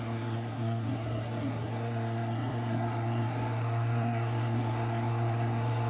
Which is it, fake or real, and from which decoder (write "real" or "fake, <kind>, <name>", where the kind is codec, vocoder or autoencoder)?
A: fake, codec, SNAC